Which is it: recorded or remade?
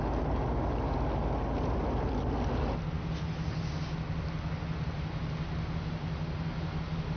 recorded